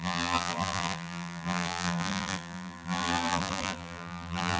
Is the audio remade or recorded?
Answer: remade